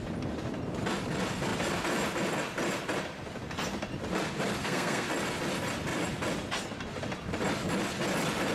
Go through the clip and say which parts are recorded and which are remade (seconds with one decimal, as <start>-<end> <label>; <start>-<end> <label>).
0.0-4.6 recorded; 4.6-5.1 remade; 5.1-8.5 recorded